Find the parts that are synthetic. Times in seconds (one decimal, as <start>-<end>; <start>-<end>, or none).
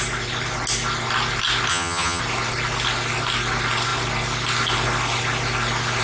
1.7-2.2